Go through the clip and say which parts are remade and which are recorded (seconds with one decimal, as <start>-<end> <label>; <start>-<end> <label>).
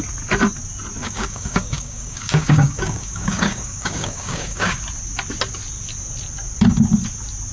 0.0-1.0 recorded; 1.0-4.8 remade; 4.8-7.5 recorded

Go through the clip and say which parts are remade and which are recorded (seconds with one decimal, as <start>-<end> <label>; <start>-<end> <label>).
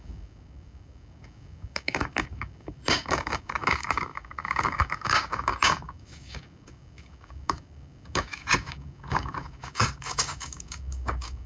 0.0-11.5 remade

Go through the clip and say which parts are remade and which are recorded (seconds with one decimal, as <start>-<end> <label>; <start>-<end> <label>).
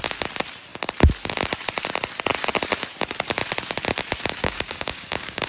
0.0-4.4 recorded; 4.4-5.5 remade